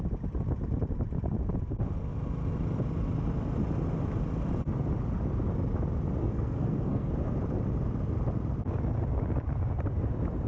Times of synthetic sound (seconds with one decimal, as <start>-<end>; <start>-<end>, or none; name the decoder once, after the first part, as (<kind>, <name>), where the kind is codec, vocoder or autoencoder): 6.2-7.1 (codec, SNAC)

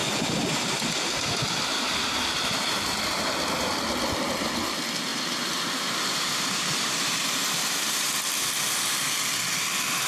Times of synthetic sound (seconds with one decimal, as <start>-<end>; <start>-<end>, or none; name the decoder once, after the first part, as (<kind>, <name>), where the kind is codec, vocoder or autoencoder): 1.7-3.2 (vocoder, BigVGAN v2); 5.1-8.1

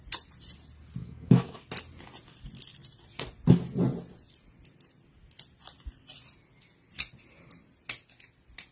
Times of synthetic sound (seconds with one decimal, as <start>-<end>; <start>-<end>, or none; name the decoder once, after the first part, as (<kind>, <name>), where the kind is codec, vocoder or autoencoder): 1.0-1.6 (autoencoder, DAC-VAE)

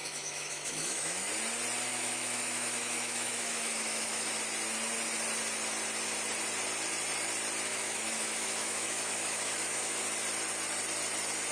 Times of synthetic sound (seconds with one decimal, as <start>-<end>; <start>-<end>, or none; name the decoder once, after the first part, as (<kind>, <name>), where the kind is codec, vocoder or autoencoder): 0.0-1.3 (autoencoder, DAC-VAE); 1.9-4.3; 7.7-10.0

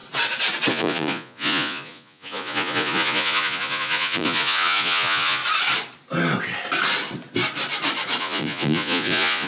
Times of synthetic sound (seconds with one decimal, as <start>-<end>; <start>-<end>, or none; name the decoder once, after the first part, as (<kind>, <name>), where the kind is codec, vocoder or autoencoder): 0.7-5.4 (vocoder, Vocos); 8.2-9.5

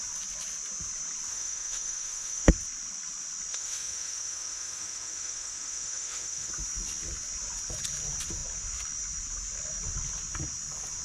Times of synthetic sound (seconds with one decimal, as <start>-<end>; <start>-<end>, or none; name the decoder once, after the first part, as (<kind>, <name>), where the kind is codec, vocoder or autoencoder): 1.3-2.5 (autoencoder, DAC-VAE); 3.5-6.5